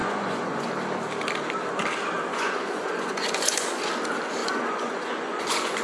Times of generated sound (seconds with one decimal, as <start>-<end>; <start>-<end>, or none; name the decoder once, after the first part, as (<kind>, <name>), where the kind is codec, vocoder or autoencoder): 0.0-0.7 (vocoder, Vocos); 2.3-3.9; 4.4-5.8